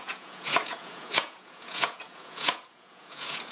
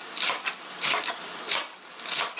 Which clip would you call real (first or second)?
second